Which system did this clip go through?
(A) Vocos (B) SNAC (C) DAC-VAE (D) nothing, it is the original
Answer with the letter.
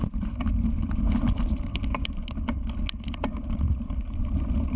D